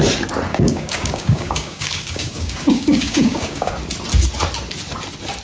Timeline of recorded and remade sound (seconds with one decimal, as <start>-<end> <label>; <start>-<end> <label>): 0.0-0.5 recorded; 0.5-3.7 remade; 3.7-5.4 recorded